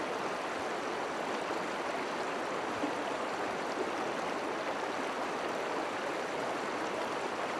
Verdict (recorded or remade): recorded